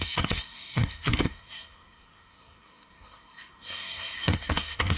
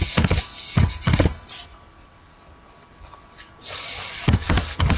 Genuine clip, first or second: second